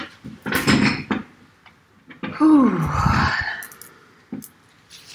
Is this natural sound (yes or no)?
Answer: yes